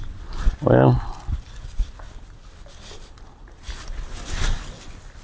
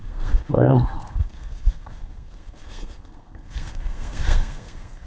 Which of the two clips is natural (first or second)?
first